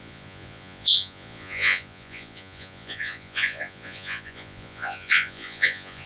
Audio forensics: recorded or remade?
remade